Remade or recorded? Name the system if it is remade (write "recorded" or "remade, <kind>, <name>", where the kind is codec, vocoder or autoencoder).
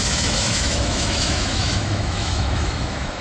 remade, autoencoder, DAC-VAE